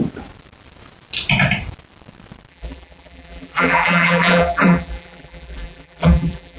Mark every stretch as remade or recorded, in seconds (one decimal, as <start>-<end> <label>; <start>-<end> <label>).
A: 0.0-2.5 recorded; 2.5-6.6 remade